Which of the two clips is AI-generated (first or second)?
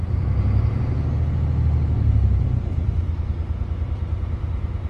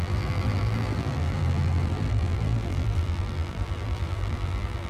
second